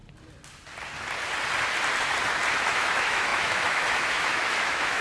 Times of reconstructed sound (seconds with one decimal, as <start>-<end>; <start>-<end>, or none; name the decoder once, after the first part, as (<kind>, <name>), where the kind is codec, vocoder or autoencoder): 2.6-5.0 (autoencoder, DAC-VAE)

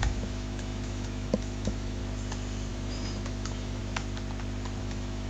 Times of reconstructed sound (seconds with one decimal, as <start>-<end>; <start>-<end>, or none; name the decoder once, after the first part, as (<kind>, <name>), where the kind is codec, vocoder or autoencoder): 0.0-2.0 (autoencoder, DAC-VAE); 2.7-3.8; 4.8-5.3

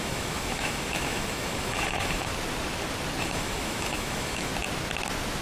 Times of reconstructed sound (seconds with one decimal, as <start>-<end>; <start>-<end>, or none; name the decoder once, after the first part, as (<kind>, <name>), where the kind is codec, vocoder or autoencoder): 0.0-2.3 (autoencoder, DAC-VAE); 3.2-4.5

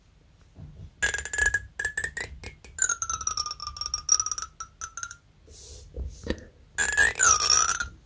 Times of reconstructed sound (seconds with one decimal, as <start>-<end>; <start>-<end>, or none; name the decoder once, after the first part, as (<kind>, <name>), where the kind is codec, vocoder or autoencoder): none